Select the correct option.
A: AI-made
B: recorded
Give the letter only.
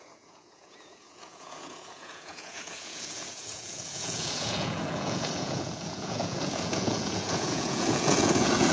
A